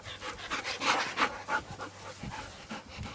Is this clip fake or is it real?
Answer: real